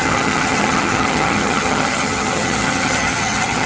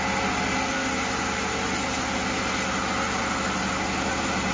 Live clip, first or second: second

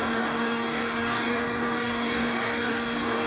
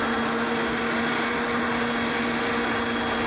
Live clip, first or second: second